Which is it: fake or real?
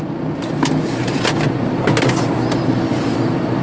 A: real